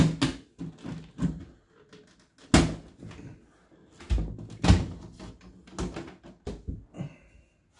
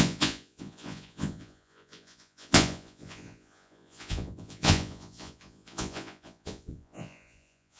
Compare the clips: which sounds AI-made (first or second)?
second